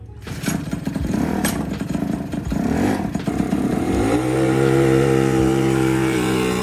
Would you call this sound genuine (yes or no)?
no